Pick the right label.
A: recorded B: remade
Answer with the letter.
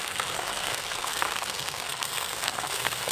B